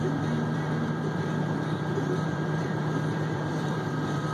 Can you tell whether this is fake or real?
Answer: fake